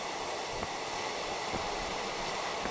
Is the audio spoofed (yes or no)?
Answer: no